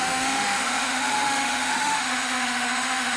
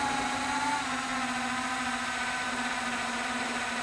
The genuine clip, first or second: second